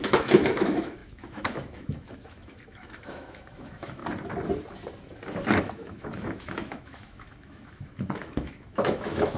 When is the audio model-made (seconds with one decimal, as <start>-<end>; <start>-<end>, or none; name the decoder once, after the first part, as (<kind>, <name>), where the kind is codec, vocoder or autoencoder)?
0.0-4.0 (autoencoder, DAC-VAE); 5.6-9.4